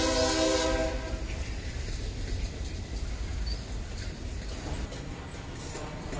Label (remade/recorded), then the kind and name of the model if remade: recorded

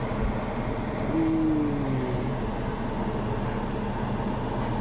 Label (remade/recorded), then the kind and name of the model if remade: recorded